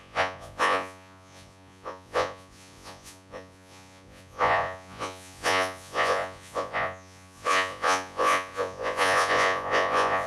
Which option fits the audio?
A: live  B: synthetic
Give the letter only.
B